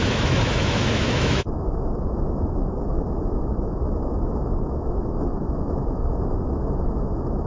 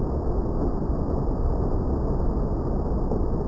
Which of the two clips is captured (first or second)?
second